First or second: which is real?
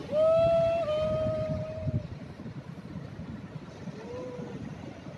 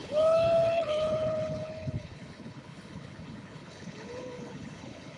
first